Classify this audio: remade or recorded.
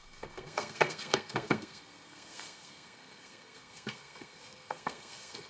remade